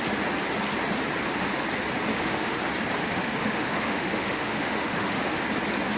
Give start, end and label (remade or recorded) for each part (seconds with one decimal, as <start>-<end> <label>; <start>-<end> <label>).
0.0-2.1 recorded; 2.1-2.6 remade; 2.6-3.0 recorded; 3.0-5.4 remade; 5.4-6.0 recorded